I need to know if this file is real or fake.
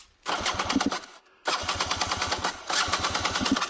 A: real